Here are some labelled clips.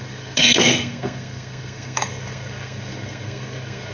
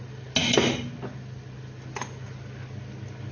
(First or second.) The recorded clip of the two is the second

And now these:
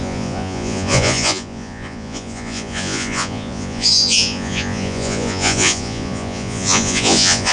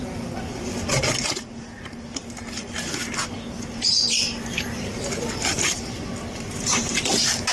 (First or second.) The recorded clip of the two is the second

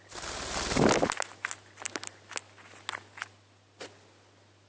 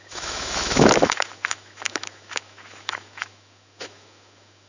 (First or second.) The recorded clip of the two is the first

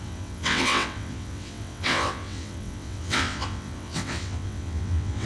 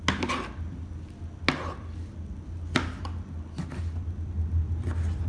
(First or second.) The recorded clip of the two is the second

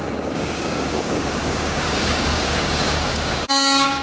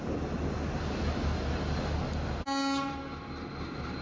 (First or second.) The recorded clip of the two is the second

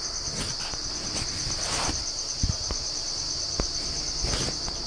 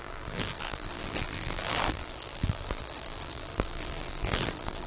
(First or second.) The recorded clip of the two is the first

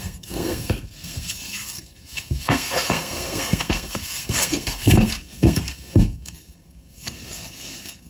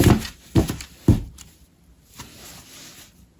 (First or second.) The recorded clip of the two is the second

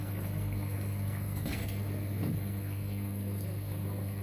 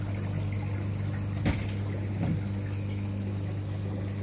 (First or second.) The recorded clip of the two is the second